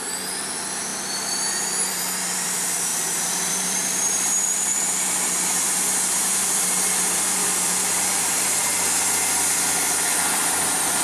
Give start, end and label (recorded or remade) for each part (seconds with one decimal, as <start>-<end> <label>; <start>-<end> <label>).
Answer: 0.0-0.9 remade; 0.9-1.9 recorded; 1.9-2.9 remade; 2.9-3.5 recorded; 3.5-8.7 remade; 8.7-9.5 recorded; 9.5-11.0 remade